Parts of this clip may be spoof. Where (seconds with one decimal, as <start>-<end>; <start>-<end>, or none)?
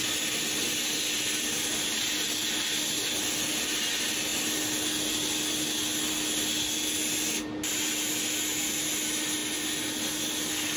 none